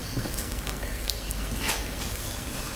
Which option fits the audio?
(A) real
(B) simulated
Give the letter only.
B